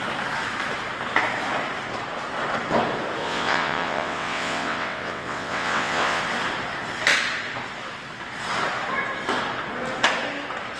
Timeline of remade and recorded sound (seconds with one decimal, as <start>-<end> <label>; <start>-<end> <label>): 0.0-3.2 recorded; 3.2-6.2 remade; 6.2-10.8 recorded